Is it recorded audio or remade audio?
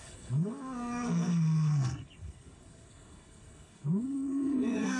remade